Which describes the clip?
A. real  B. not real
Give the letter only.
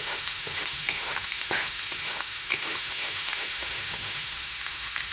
B